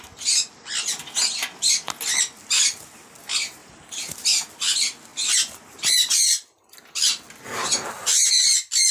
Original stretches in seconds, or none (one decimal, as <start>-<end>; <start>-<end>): 0.0-3.6; 4.5-8.9